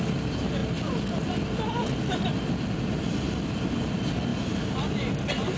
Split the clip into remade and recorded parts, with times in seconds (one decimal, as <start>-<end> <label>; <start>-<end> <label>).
0.0-5.6 recorded